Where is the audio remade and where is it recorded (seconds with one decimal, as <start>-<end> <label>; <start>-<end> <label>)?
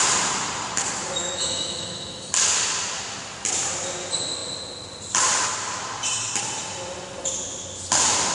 0.0-1.2 recorded; 1.2-2.2 remade; 2.2-8.3 recorded